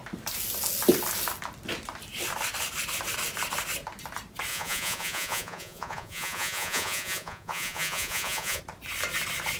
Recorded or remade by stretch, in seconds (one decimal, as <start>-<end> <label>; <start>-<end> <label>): 0.0-4.5 recorded; 4.5-8.6 remade; 8.6-9.6 recorded